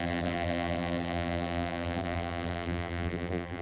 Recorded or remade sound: remade